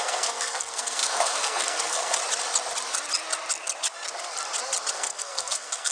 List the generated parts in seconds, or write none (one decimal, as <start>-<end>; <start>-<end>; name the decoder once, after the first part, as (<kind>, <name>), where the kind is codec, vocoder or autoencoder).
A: 0.0-2.2 (codec, SNAC); 4.9-5.9